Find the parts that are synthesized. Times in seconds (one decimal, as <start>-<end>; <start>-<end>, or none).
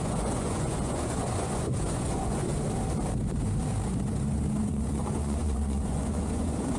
0.0-2.5; 4.6-6.8